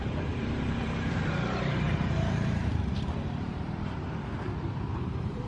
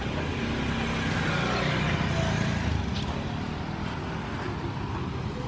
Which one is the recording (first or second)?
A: second